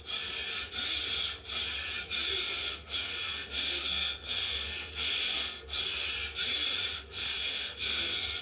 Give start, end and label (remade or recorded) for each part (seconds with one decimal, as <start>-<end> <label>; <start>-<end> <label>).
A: 0.0-2.4 recorded; 2.4-5.8 remade; 5.8-6.9 recorded; 6.9-8.4 remade